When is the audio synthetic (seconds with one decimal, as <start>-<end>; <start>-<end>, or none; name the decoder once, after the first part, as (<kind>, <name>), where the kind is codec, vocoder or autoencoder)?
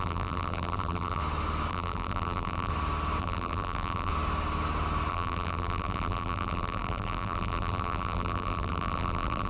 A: 0.0-1.2 (vocoder, BigVGAN v2); 1.7-2.7; 3.2-4.1; 5.1-9.5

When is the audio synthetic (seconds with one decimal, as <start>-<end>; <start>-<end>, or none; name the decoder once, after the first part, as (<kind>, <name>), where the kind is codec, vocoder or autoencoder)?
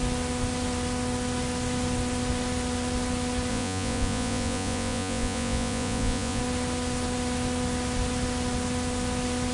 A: 3.5-6.4 (vocoder, Vocos)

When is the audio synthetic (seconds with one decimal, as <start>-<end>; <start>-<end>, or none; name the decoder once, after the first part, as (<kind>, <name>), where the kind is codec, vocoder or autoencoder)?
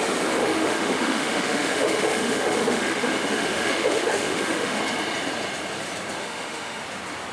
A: 0.4-4.8 (autoencoder, DAC-VAE); 6.2-6.8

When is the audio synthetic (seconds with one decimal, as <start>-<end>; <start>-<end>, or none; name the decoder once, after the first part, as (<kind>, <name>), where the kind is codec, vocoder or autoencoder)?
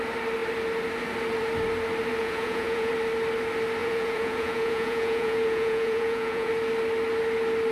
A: 2.2-2.9 (vocoder, Vocos); 3.8-6.5